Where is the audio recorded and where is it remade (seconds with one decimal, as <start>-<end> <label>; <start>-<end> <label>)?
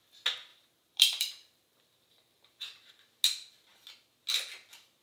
0.0-0.5 recorded; 0.5-2.9 remade; 2.9-5.0 recorded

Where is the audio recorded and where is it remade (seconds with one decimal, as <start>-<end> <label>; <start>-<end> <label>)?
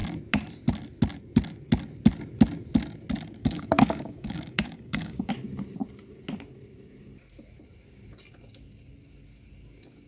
0.0-3.4 recorded; 3.4-5.3 remade; 5.3-10.1 recorded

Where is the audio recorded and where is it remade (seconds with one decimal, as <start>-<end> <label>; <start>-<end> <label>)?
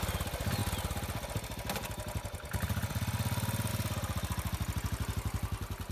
0.0-5.9 recorded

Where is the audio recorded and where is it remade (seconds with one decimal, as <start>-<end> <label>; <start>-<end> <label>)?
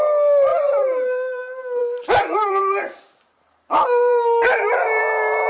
0.0-0.5 recorded; 0.5-1.4 remade; 1.4-1.8 recorded; 1.8-2.6 remade; 2.6-3.1 recorded; 3.1-5.0 remade; 5.0-5.5 recorded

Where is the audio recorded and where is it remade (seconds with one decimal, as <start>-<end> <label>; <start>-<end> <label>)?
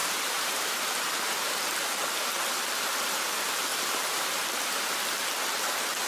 0.0-1.6 remade; 1.6-3.7 recorded; 3.7-4.3 remade; 4.3-6.1 recorded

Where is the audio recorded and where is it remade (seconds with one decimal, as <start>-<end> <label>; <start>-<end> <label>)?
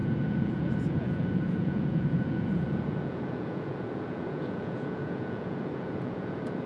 0.0-6.7 remade